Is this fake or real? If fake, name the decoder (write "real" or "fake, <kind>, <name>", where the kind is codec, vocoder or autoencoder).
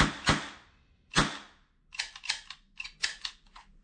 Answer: real